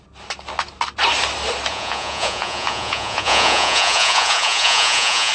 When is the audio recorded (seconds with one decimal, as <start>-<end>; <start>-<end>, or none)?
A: 0.0-1.7